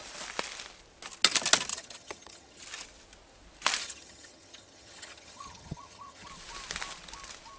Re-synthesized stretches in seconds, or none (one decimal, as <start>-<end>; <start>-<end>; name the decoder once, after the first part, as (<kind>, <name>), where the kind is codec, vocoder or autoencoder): 1.7-2.6 (vocoder, HiFi-GAN); 3.8-6.3